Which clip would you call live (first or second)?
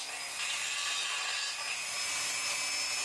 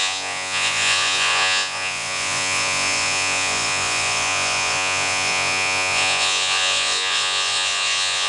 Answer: first